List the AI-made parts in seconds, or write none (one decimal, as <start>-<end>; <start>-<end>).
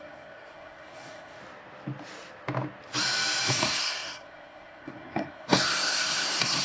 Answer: 0.0-1.4; 3.5-6.6